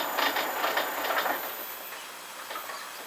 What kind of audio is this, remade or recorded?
recorded